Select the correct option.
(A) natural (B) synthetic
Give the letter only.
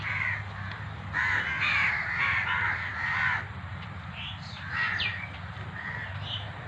B